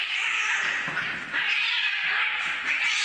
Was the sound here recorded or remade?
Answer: recorded